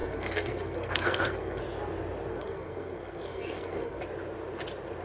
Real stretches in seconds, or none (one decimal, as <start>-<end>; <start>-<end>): 1.6-2.3; 4.0-5.0